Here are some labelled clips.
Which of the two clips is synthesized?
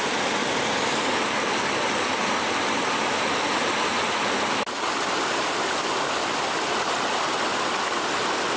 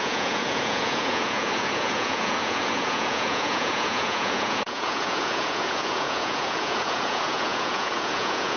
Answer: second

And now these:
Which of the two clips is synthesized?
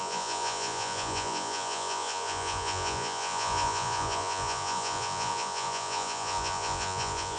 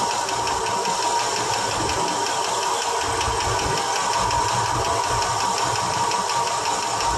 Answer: first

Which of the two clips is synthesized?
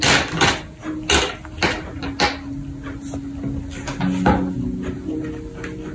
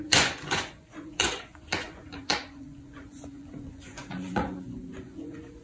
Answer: second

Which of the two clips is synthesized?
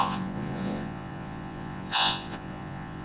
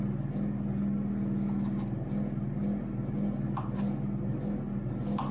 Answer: first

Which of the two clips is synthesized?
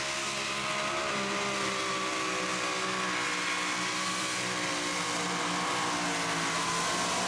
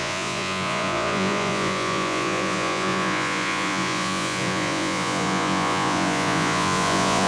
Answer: second